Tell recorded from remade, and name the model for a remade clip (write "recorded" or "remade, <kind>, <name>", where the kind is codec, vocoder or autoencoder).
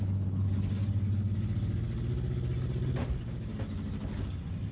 recorded